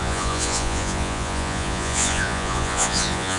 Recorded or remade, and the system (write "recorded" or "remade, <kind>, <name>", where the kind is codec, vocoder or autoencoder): remade, vocoder, Vocos